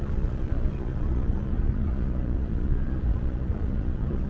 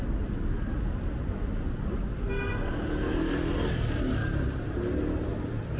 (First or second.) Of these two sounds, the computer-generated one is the first